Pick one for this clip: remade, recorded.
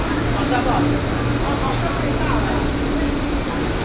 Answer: recorded